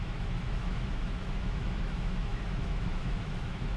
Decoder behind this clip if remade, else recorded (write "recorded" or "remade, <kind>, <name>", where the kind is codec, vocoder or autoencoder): remade, autoencoder, DAC-VAE